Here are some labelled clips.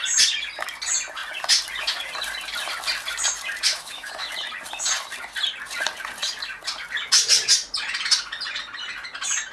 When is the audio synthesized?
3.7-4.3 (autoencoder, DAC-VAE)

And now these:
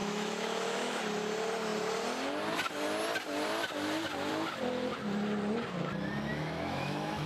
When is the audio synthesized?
0.0-1.0 (autoencoder, DAC-VAE); 6.3-7.3

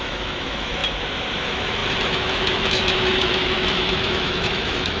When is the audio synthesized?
0.0-0.8 (autoencoder, DAC-VAE); 1.4-5.0

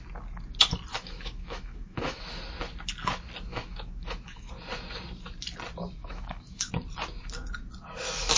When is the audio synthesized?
0.9-2.4 (autoencoder, DAC-VAE); 3.5-4.5; 6.0-6.7